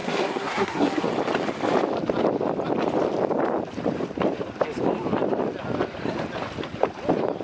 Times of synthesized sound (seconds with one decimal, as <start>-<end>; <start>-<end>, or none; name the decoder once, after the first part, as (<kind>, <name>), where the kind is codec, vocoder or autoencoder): 0.0-1.1 (codec, SNAC)